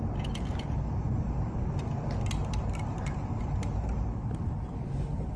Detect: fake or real real